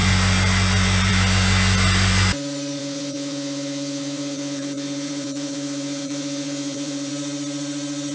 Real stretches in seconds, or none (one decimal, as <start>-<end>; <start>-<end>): 0.0-2.8; 7.1-8.1